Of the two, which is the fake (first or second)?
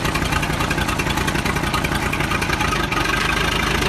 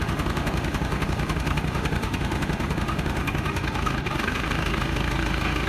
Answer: second